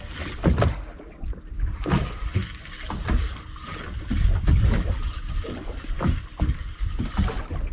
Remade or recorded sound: recorded